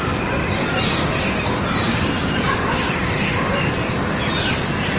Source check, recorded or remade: recorded